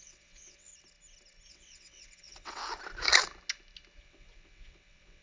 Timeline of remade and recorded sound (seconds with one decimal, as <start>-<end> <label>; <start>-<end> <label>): 0.0-0.7 remade; 0.7-1.5 recorded; 1.5-2.6 remade; 2.6-4.0 recorded; 4.0-5.2 remade